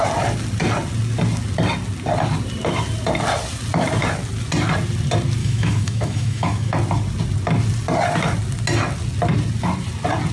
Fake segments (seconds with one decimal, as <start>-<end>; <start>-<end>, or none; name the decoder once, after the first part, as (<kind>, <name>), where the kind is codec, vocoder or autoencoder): 5.4-6.7 (autoencoder, DAC-VAE)